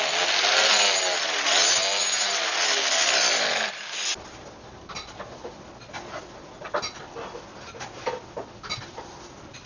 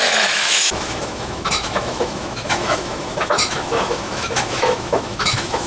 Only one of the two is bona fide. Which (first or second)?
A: first